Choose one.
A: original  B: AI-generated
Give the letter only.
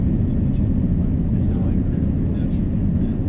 A